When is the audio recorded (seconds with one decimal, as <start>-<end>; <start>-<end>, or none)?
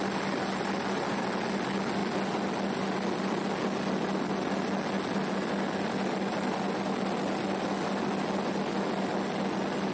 0.0-9.9